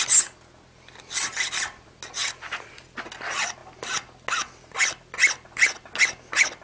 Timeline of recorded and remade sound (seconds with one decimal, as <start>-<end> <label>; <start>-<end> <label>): 0.0-2.2 recorded; 2.2-2.7 remade; 2.7-6.6 recorded